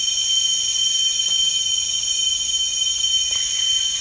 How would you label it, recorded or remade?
recorded